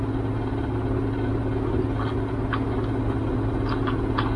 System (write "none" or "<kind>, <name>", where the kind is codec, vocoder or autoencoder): none